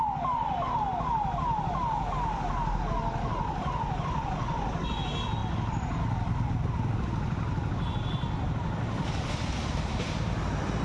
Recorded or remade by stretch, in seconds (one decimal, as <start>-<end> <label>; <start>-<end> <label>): 0.0-10.8 recorded